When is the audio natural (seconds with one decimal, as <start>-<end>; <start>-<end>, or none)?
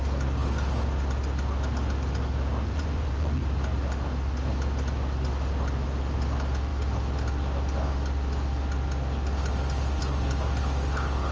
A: 0.0-2.6; 3.4-11.3